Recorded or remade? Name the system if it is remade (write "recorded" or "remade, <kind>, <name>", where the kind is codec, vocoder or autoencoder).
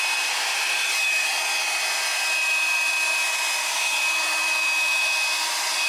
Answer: recorded